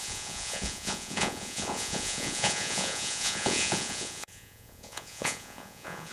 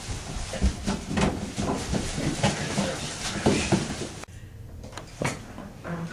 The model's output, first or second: first